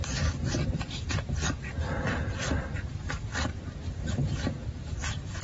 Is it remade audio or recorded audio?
recorded